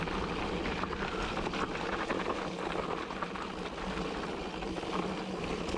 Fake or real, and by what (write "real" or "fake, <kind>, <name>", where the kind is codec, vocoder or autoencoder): real